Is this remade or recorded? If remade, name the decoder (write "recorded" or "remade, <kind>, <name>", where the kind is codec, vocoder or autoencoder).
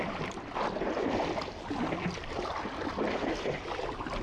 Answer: recorded